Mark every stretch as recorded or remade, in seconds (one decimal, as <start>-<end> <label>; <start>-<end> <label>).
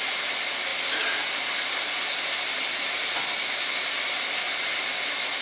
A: 0.0-5.4 recorded